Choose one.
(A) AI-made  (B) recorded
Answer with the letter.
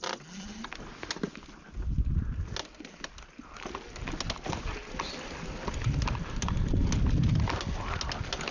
B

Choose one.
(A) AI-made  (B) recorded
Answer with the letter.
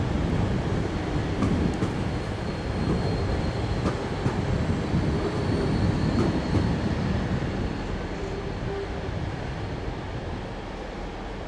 B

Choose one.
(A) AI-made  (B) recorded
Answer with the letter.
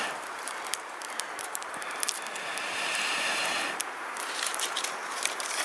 A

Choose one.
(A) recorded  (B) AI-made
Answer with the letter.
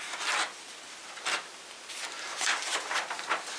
A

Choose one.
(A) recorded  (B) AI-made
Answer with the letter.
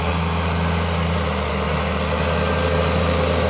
A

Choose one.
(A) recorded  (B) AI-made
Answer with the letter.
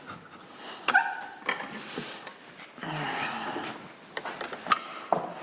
A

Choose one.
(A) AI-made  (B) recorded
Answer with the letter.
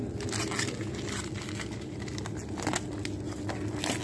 B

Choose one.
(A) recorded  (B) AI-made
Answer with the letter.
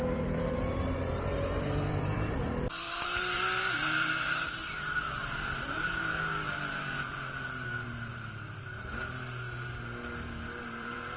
B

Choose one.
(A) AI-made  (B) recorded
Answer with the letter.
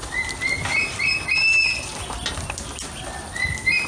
A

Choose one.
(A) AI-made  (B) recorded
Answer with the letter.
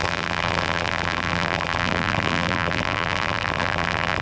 A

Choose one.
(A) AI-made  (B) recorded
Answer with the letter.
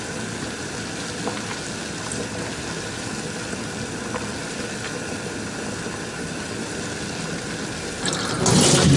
B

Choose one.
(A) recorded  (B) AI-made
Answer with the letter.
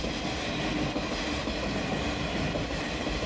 A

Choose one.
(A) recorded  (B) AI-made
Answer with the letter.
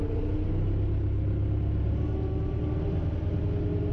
A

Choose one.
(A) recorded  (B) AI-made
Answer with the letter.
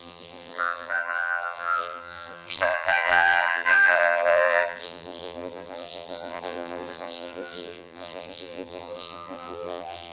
B